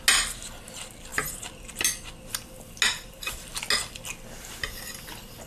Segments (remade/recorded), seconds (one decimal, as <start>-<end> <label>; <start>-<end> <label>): 0.0-2.9 recorded; 2.9-3.5 remade; 3.5-5.5 recorded